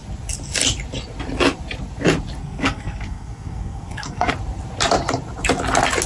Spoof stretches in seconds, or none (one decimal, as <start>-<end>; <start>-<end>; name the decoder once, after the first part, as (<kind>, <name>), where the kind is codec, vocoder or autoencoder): 2.4-4.3 (codec, SNAC)